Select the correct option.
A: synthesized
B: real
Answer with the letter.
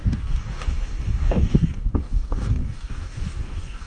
A